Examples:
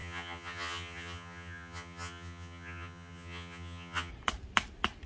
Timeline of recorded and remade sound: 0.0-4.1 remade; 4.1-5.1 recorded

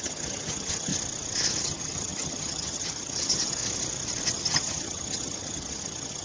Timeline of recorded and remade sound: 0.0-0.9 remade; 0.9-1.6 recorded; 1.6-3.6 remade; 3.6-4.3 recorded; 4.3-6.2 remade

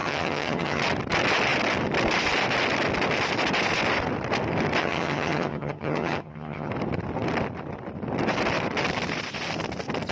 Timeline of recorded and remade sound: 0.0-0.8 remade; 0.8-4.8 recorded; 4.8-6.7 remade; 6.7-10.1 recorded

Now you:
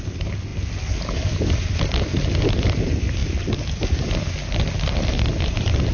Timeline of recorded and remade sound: 0.0-5.9 recorded

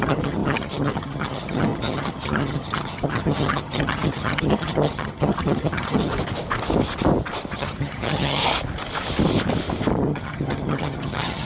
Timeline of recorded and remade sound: 0.0-6.1 remade; 6.1-7.5 recorded; 7.5-8.4 remade; 8.4-10.0 recorded; 10.0-11.4 remade

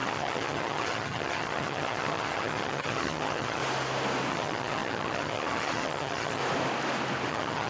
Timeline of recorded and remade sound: 0.0-3.6 remade; 3.6-4.3 recorded; 4.3-6.4 remade; 6.4-7.3 recorded; 7.3-7.7 remade

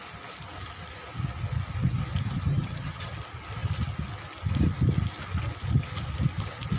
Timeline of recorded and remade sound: 0.0-2.5 recorded; 2.5-3.1 remade; 3.1-6.8 recorded

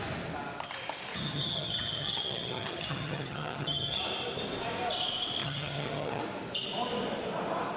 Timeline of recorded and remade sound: 0.0-1.1 recorded; 1.1-4.0 remade; 4.0-5.4 recorded; 5.4-6.2 remade; 6.2-7.8 recorded